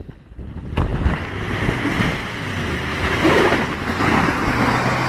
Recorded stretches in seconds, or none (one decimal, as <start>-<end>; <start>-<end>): 0.0-0.9; 2.1-2.9; 4.0-5.1